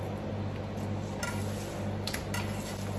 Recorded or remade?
recorded